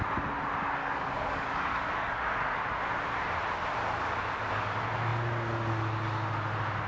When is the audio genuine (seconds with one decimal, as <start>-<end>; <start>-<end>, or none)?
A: 0.0-0.8; 2.6-6.9